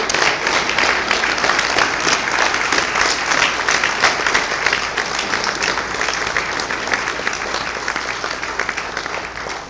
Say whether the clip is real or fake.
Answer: real